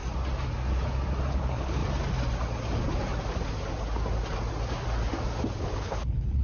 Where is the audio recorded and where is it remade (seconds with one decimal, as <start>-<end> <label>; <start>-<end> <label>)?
0.0-1.3 recorded; 1.3-1.8 remade; 1.8-5.6 recorded; 5.6-6.4 remade